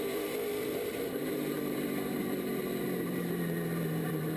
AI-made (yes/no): yes